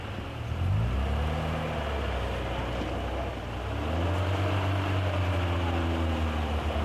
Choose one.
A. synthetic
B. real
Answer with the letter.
B